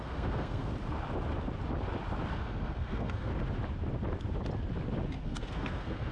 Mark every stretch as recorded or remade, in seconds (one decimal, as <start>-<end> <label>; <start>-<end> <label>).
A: 0.0-0.7 remade; 0.7-2.3 recorded; 2.3-3.3 remade; 3.3-5.2 recorded; 5.2-6.1 remade